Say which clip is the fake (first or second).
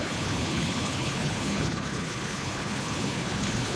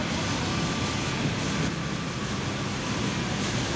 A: first